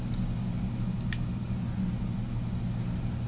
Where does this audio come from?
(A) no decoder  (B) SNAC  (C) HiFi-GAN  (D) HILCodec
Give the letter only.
A